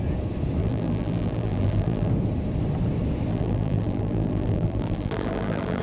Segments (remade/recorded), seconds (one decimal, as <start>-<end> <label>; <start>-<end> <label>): 0.0-0.6 recorded; 0.6-2.1 remade; 2.1-3.3 recorded; 3.3-5.8 remade